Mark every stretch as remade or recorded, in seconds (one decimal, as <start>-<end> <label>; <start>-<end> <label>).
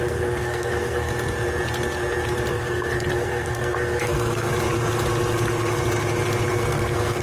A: 0.0-1.1 remade; 1.1-2.5 recorded; 2.5-4.5 remade; 4.5-6.5 recorded; 6.5-7.2 remade